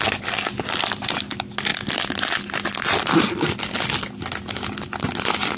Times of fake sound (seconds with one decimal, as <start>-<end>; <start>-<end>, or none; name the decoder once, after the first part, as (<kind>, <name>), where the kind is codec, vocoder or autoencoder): 1.7-4.3 (vocoder, BigVGAN v2)